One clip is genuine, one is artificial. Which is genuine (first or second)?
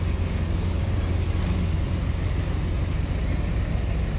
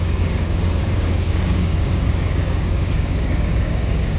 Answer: first